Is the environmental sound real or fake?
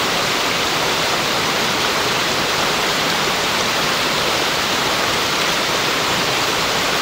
fake